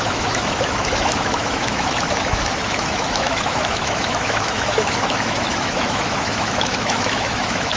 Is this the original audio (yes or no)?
no